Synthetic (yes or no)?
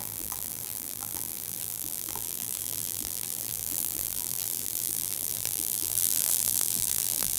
yes